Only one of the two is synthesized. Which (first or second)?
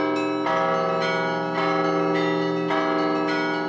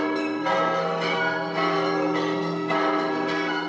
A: second